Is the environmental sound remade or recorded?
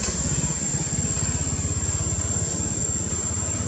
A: recorded